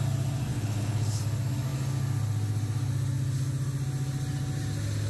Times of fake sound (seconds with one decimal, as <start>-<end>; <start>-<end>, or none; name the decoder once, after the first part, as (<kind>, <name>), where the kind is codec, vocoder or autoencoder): 0.5-1.2 (codec, HILCodec)